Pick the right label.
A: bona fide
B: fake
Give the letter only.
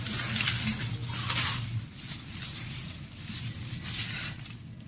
A